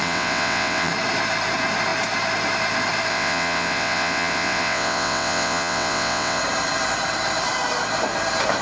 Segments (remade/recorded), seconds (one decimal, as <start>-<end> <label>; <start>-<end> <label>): 0.0-0.9 remade; 0.9-3.1 recorded; 3.1-6.4 remade; 6.4-8.6 recorded